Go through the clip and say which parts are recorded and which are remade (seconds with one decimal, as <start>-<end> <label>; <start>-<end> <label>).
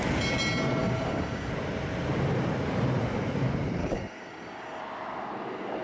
0.0-0.8 recorded; 0.8-1.5 remade; 1.5-3.8 recorded; 3.8-4.8 remade; 4.8-5.8 recorded